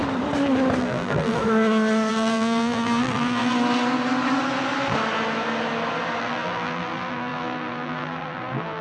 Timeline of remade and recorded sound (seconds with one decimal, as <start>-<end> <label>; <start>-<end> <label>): 0.0-0.8 recorded; 0.8-1.4 remade; 1.4-2.1 recorded; 2.1-3.5 remade; 3.5-6.2 recorded; 6.2-8.8 remade